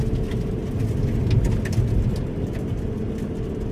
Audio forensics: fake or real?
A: real